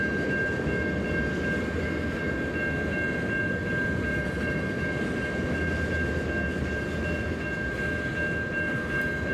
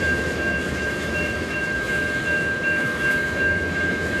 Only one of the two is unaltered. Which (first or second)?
first